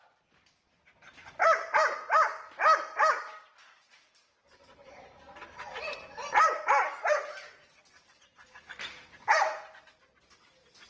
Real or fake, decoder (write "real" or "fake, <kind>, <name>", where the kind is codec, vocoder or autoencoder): real